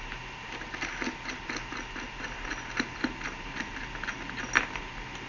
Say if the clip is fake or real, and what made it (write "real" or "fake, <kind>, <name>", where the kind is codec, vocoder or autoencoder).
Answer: real